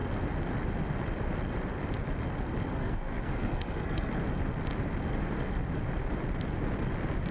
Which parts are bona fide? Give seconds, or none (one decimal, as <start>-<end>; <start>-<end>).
0.0-2.7; 4.2-7.3